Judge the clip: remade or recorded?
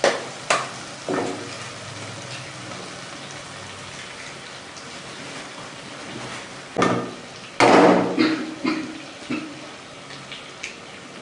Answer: recorded